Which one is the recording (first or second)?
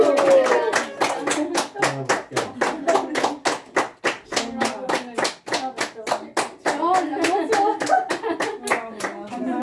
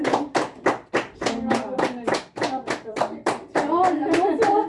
first